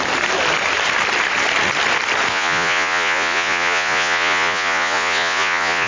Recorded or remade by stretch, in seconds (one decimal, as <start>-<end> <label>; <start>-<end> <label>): 0.0-2.3 recorded; 2.3-5.9 remade

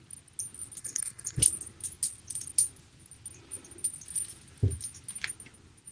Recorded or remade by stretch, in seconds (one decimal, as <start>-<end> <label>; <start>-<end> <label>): 0.0-0.8 recorded; 0.8-1.4 remade; 1.4-5.9 recorded